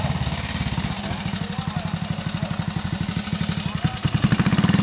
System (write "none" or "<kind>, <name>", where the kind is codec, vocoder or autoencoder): none